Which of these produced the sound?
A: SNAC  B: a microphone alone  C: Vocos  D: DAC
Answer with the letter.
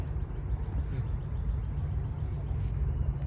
B